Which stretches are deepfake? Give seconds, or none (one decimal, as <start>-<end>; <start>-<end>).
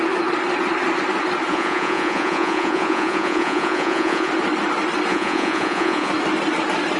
1.5-4.3; 5.1-6.1